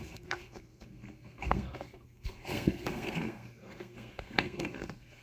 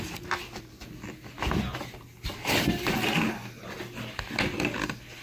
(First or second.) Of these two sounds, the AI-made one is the first